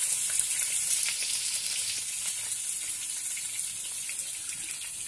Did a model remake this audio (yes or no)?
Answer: no